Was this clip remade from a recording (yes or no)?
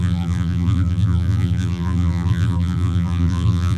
yes